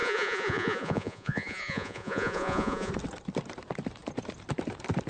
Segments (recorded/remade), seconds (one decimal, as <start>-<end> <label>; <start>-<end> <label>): 0.0-2.9 remade; 2.9-5.1 recorded